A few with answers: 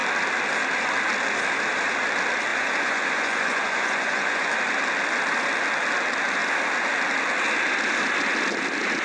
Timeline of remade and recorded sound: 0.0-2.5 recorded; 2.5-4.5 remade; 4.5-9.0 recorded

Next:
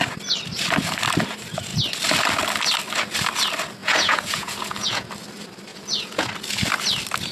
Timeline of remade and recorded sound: 0.0-3.8 recorded; 3.8-5.1 remade; 5.1-5.7 recorded; 5.7-6.3 remade; 6.3-7.3 recorded

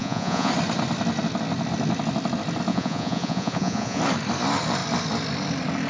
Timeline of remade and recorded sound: 0.0-0.5 remade; 0.5-2.7 recorded; 2.7-4.0 remade; 4.0-5.9 recorded

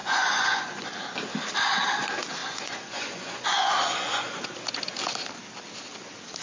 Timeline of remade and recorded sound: 0.0-0.9 remade; 0.9-2.4 recorded; 2.4-4.4 remade; 4.4-6.4 recorded

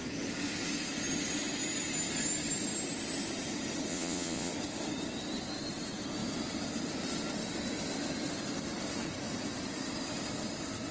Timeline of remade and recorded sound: 0.0-3.9 recorded; 3.9-4.5 remade; 4.5-10.9 recorded

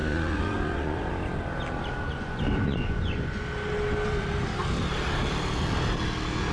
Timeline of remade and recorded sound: 0.0-1.1 remade; 1.1-2.1 recorded; 2.1-3.4 remade; 3.4-6.5 recorded